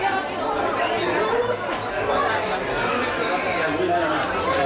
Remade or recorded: recorded